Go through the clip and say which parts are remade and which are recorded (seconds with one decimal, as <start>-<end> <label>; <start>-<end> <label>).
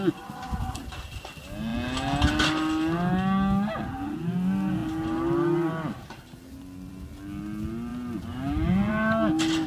0.0-9.7 recorded